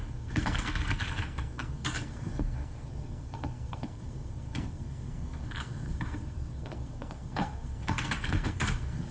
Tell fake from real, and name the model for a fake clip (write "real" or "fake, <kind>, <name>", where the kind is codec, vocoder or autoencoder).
fake, codec, SNAC